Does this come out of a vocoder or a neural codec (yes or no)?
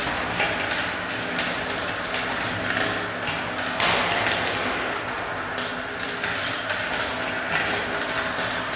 no